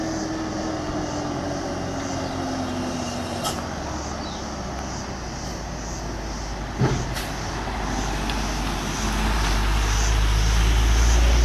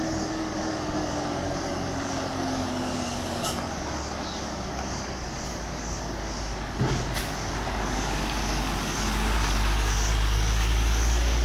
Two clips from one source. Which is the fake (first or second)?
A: second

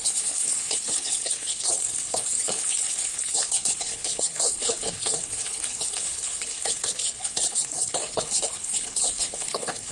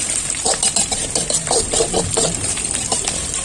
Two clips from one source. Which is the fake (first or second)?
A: first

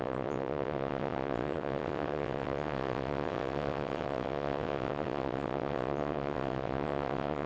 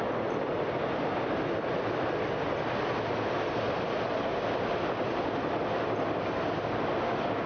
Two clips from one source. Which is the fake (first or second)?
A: first